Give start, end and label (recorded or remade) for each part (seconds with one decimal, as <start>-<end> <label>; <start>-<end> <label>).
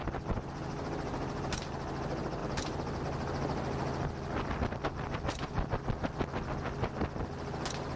0.0-2.4 recorded; 2.4-3.0 remade; 3.0-8.0 recorded